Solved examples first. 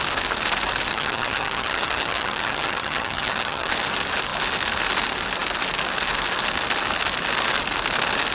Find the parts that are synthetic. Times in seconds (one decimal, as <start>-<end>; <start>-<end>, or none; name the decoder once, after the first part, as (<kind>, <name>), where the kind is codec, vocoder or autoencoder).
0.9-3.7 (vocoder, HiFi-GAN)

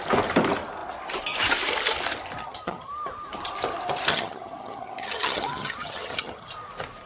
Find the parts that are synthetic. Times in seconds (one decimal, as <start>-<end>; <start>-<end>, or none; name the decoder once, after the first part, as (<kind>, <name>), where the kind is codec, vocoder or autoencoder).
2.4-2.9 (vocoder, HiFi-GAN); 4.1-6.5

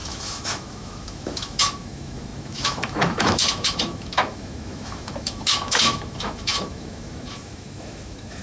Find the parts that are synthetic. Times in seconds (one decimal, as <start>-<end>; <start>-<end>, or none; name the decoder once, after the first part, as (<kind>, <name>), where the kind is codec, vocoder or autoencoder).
0.0-8.4 (autoencoder, DAC-VAE)